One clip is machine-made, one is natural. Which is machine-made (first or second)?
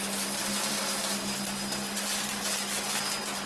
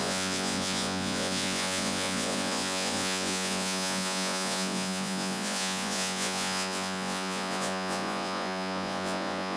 second